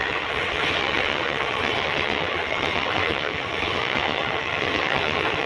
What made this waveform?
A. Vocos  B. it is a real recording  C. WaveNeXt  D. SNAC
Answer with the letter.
C